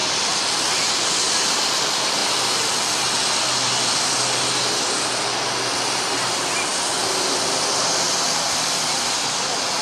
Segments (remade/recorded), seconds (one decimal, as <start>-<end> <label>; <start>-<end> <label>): 0.0-9.8 recorded